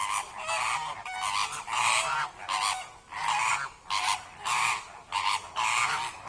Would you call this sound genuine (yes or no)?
yes